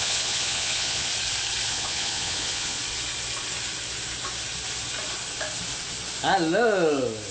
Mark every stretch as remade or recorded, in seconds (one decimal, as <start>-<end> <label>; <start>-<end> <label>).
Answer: 0.0-1.1 remade; 1.1-1.7 recorded; 1.7-2.8 remade; 2.8-7.3 recorded